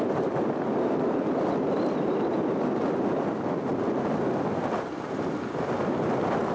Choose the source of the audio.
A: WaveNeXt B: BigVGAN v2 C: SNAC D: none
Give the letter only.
D